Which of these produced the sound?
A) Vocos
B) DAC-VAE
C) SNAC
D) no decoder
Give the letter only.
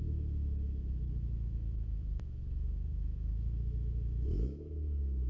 B